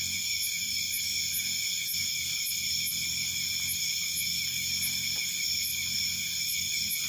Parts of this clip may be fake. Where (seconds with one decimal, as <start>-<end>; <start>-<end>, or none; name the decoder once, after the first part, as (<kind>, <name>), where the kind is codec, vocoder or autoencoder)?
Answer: none

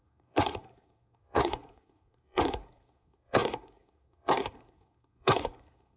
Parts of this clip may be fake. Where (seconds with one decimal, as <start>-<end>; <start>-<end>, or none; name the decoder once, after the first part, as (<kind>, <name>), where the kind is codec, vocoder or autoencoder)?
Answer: 0.0-6.0 (codec, SNAC)

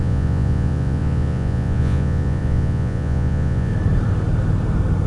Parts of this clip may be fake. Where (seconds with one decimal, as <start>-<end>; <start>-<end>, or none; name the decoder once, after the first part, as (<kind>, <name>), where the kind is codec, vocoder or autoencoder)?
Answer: 0.0-3.7 (vocoder, Vocos)

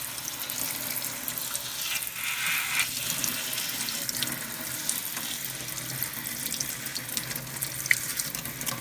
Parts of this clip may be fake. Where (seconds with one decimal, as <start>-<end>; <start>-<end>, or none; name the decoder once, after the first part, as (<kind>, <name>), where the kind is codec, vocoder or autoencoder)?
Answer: none

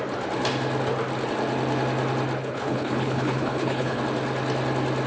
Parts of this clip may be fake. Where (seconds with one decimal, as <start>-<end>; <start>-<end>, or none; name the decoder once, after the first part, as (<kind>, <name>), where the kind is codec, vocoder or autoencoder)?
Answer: 2.4-4.0 (codec, HILCodec)

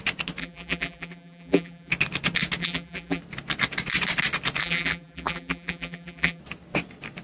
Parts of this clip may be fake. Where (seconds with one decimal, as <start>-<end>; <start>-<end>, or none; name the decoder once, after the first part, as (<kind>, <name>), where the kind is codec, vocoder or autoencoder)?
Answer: 0.4-1.9 (vocoder, BigVGAN v2); 2.6-3.2; 4.6-6.4

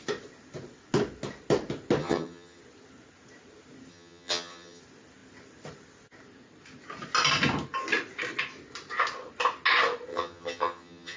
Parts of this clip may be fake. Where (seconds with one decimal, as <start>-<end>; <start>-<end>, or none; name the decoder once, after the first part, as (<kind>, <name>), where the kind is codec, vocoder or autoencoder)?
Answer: 2.0-2.6 (vocoder, HiFi-GAN); 3.9-4.8; 10.1-11.2

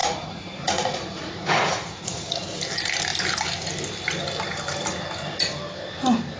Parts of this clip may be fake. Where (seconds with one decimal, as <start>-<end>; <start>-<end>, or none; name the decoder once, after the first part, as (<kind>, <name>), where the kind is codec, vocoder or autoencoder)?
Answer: 0.0-2.3 (vocoder, Vocos)